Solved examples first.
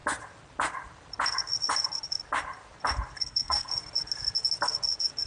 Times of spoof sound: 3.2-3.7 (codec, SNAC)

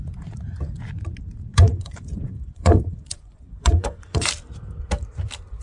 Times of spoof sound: 1.5-4.3 (vocoder, Vocos)